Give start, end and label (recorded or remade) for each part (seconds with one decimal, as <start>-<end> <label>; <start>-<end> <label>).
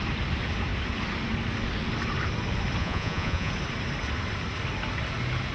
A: 0.0-2.8 recorded; 2.8-3.5 remade; 3.5-5.5 recorded